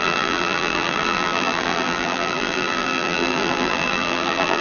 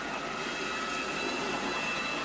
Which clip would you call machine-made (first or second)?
first